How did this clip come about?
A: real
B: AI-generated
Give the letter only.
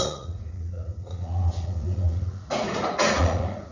B